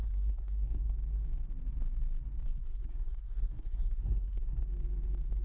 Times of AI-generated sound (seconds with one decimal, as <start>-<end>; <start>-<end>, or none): 0.0-0.9; 2.6-4.6